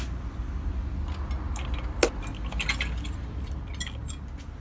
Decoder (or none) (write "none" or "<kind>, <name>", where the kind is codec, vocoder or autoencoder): none